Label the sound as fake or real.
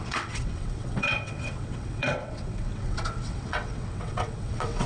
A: fake